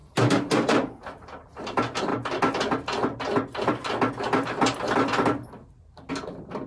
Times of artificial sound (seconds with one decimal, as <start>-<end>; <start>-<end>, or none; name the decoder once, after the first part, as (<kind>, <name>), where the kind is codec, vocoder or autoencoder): 0.0-0.5 (vocoder, BigVGAN v2)